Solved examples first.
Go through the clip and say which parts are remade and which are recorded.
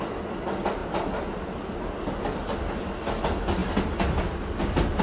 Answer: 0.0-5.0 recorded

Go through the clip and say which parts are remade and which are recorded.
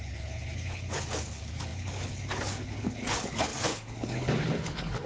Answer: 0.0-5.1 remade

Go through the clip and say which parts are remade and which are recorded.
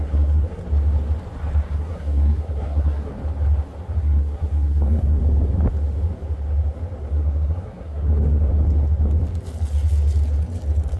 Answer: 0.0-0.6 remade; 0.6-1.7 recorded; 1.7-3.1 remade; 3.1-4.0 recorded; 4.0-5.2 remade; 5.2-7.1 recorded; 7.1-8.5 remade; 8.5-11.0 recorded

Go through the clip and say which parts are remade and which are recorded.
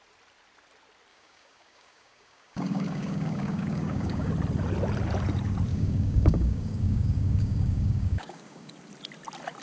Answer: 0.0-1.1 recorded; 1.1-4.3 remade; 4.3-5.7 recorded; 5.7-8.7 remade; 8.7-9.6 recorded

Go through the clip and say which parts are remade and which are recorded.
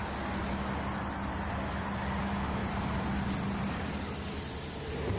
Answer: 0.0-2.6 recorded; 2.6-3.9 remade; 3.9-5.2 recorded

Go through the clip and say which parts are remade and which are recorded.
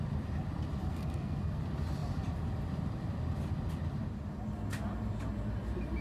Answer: 0.0-0.9 recorded; 0.9-1.6 remade; 1.6-6.0 recorded